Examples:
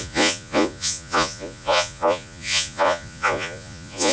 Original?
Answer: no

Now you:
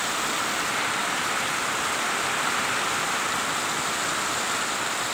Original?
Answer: yes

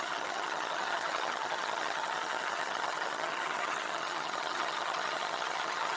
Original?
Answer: no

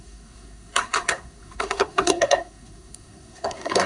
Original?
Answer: no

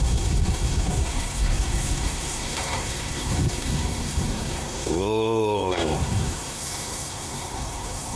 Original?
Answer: no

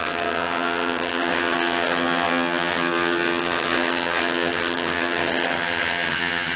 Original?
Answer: no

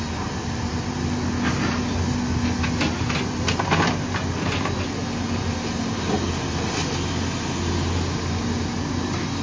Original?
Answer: yes